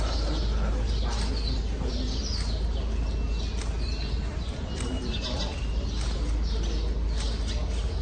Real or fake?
real